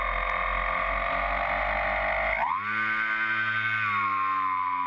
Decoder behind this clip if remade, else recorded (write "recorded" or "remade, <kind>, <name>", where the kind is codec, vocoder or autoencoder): recorded